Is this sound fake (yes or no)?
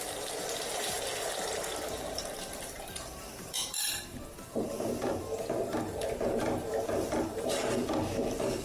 yes